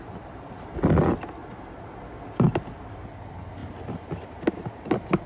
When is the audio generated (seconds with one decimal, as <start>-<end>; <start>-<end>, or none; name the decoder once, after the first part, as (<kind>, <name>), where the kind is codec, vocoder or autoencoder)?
none